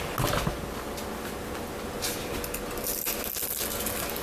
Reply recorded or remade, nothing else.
recorded